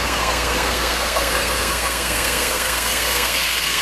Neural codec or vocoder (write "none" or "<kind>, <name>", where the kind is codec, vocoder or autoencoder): codec, SNAC